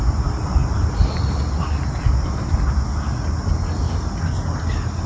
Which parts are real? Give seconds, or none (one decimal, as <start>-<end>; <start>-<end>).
0.0-5.1

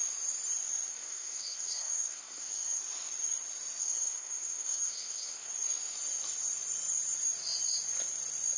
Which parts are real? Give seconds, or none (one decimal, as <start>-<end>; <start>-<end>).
0.0-0.9; 2.8-3.8; 5.5-8.6

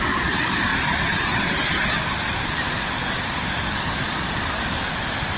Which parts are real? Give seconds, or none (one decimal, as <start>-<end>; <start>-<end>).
0.7-3.9

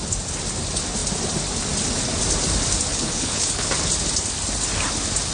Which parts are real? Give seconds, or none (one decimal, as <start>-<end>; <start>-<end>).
0.0-2.9; 3.7-5.3

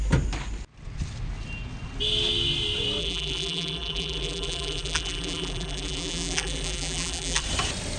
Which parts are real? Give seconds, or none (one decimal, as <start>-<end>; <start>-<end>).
0.0-3.0; 7.4-8.0

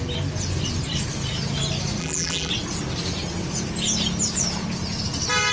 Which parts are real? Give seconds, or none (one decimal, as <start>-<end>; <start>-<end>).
0.0-2.0; 2.5-5.5